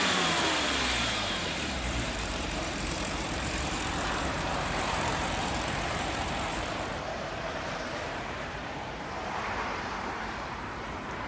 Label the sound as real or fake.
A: fake